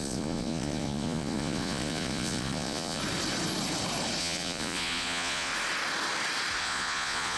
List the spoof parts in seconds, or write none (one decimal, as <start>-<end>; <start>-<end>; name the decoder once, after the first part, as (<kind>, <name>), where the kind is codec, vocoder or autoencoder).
0.0-3.0 (vocoder, Vocos); 4.2-5.5; 6.6-7.4